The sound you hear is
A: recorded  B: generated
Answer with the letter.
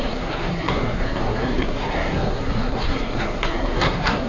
B